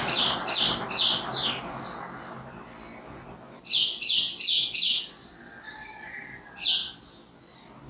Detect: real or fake real